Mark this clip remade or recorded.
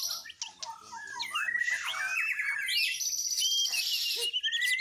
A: recorded